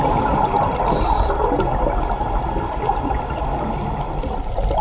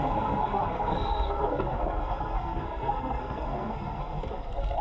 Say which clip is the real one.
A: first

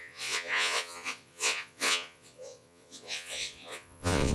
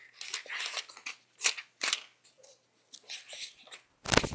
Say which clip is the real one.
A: second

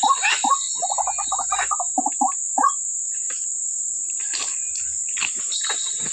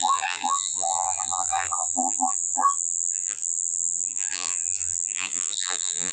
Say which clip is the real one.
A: first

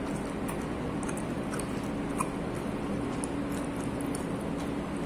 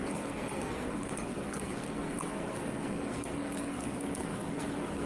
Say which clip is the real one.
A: first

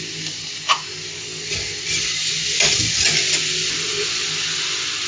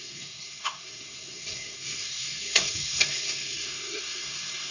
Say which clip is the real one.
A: first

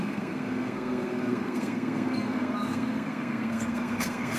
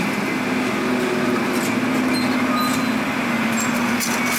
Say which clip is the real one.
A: second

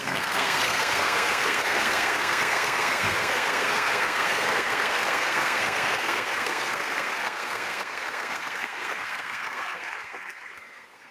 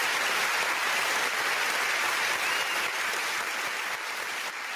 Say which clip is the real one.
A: second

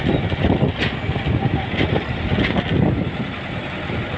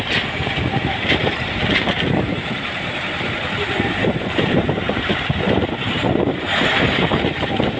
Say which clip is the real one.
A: first